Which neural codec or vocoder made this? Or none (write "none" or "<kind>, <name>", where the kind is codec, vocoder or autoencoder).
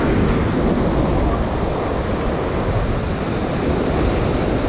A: none